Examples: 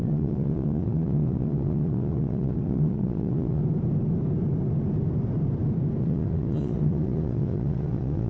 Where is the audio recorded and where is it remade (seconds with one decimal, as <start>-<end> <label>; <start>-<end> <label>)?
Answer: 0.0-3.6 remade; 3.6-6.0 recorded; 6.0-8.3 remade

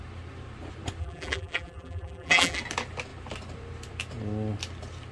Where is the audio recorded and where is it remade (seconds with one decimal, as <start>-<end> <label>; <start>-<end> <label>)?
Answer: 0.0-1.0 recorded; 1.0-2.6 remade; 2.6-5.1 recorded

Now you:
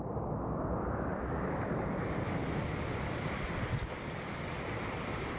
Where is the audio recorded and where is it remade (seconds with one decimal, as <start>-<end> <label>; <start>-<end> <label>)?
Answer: 0.0-1.1 recorded; 1.1-3.6 remade; 3.6-5.4 recorded

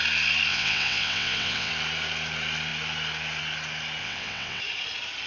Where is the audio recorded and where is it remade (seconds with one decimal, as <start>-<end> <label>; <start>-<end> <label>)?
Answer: 0.0-0.5 recorded; 0.5-1.7 remade; 1.7-4.0 recorded; 4.0-4.6 remade; 4.6-5.3 recorded

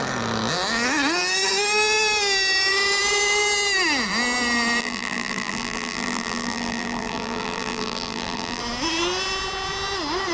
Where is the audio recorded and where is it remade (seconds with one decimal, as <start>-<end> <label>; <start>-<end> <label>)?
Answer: 0.0-4.8 recorded; 4.8-8.6 remade; 8.6-10.3 recorded

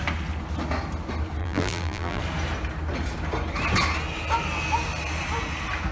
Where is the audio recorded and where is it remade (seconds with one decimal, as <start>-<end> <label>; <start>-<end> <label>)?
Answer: 0.0-1.4 recorded; 1.4-2.2 remade; 2.2-5.9 recorded

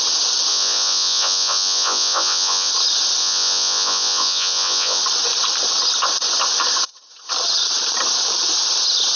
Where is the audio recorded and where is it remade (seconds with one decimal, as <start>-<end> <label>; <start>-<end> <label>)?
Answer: 0.0-0.5 recorded; 0.5-2.7 remade; 2.7-3.2 recorded; 3.2-5.0 remade; 5.0-9.2 recorded

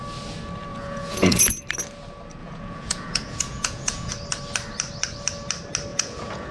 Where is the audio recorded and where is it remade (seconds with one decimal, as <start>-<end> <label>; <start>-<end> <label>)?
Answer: 0.0-0.7 recorded; 0.7-1.6 remade; 1.6-2.4 recorded; 2.4-4.1 remade; 4.1-5.9 recorded; 5.9-6.5 remade